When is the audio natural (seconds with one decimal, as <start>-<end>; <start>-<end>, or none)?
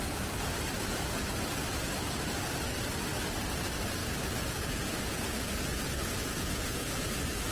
0.0-4.0; 7.1-7.5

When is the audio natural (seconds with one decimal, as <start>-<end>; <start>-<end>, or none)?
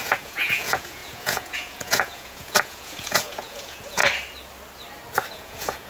4.0-5.3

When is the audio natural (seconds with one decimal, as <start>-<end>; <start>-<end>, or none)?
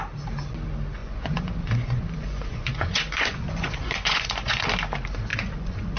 0.0-1.0; 4.6-5.3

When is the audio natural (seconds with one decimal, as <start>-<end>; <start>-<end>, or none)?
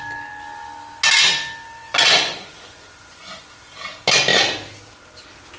0.0-1.8; 3.5-5.6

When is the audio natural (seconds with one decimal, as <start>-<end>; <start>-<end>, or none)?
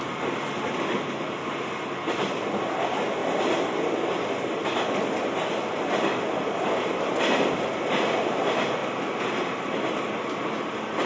0.0-11.1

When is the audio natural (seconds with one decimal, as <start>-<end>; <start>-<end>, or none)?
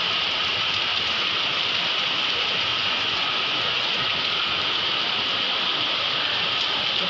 0.0-2.7; 4.0-7.1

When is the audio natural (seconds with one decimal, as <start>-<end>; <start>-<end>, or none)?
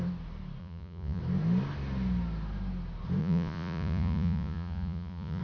0.0-0.6; 1.2-3.2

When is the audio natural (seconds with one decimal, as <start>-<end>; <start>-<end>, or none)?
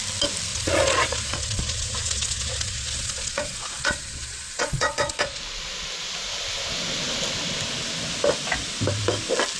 0.0-0.5; 5.4-9.6